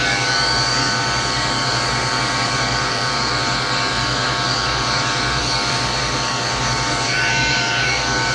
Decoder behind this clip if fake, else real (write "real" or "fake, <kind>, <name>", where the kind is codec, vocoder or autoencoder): fake, codec, DAC